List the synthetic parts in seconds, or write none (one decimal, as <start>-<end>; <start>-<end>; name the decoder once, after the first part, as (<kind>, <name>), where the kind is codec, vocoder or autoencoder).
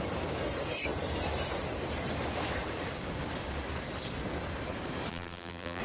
5.1-5.8 (vocoder, BigVGAN v2)